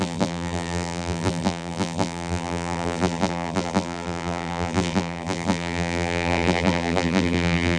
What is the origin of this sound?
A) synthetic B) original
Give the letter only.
A